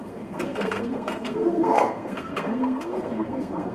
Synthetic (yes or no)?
yes